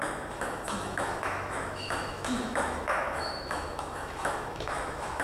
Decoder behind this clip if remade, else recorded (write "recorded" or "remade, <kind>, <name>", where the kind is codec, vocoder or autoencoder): remade, autoencoder, DAC-VAE